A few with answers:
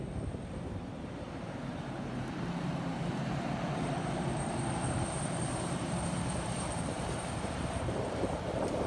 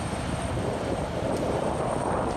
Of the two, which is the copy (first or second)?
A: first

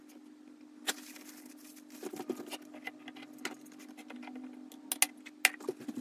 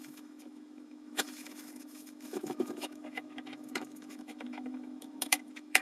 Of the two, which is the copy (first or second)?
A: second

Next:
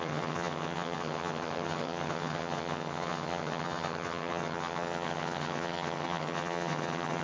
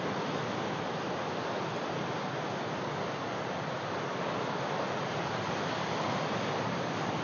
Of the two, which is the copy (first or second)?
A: first